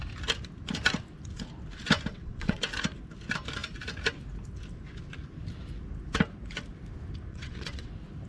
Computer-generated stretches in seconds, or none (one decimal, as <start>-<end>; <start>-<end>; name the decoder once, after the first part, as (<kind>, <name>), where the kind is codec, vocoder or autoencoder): 2.1-2.6 (vocoder, WaveNeXt); 7.3-7.9